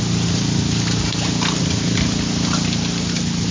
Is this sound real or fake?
real